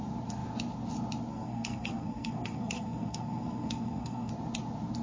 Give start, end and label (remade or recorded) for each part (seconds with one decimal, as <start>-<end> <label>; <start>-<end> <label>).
0.0-1.3 recorded; 1.3-4.3 remade; 4.3-5.0 recorded